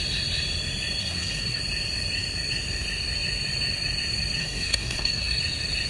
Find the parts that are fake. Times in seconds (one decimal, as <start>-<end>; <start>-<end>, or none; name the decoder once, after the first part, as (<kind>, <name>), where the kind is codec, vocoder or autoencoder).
1.0-1.6 (codec, SNAC); 4.4-5.4